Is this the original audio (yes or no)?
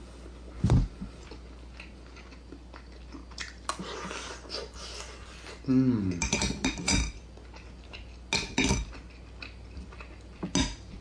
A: yes